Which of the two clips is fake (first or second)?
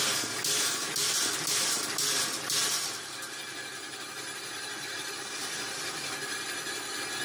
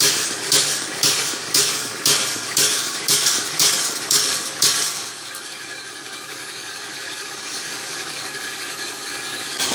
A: second